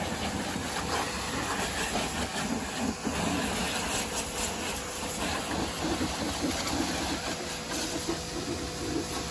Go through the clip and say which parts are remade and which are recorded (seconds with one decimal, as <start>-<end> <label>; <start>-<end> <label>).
0.0-9.3 recorded